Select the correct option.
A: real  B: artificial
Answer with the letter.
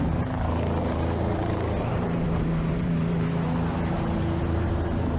B